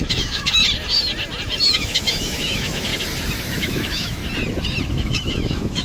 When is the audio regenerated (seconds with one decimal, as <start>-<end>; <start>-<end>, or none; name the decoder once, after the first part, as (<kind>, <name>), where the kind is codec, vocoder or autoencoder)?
0.0-0.6 (autoencoder, DAC-VAE); 1.7-2.9; 3.4-4.2; 4.9-5.8